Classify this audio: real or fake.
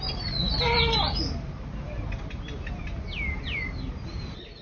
real